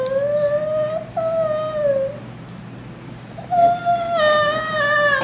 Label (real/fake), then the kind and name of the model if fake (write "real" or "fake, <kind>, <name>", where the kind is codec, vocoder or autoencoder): real